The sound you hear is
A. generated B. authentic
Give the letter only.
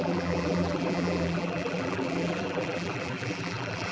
A